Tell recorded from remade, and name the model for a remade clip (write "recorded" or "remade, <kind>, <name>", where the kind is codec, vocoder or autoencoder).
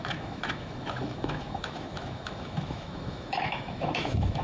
remade, autoencoder, DAC-VAE